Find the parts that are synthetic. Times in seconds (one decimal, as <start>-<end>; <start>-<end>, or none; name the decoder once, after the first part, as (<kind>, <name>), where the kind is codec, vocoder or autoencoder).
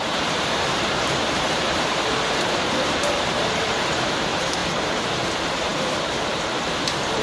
0.0-7.2 (vocoder, BigVGAN v2)